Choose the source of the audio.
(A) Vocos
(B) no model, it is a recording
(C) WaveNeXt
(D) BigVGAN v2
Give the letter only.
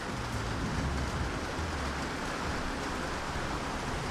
B